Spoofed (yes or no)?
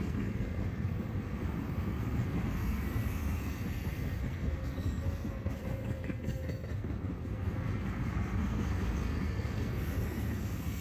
yes